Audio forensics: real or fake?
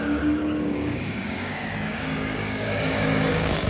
fake